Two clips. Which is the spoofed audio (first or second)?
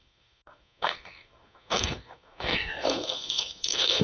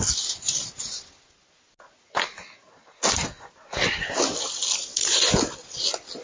first